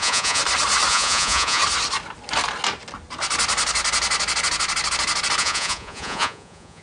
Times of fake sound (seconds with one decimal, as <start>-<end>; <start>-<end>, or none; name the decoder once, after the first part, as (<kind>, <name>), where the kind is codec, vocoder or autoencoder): 0.0-0.4 (vocoder, Vocos); 0.9-1.6; 5.4-6.8